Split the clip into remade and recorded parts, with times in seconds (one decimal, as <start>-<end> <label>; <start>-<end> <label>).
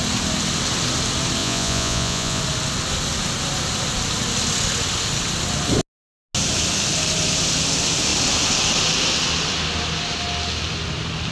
0.0-1.4 recorded; 1.4-2.4 remade; 2.4-11.3 recorded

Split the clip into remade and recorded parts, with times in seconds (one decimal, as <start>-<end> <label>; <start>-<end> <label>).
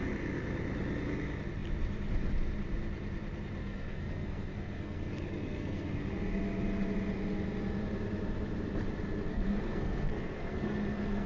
0.0-3.6 recorded; 3.6-6.1 remade; 6.1-9.3 recorded; 9.3-11.3 remade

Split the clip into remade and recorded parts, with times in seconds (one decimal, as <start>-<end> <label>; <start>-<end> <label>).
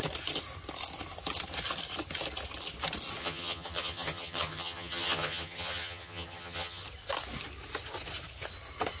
0.0-3.2 recorded; 3.2-6.8 remade; 6.8-9.0 recorded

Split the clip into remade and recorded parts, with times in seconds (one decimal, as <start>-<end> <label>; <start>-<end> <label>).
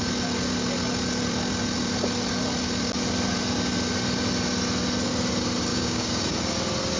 0.0-5.7 recorded; 5.7-6.3 remade; 6.3-7.0 recorded